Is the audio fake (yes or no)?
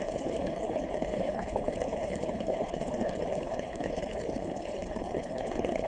yes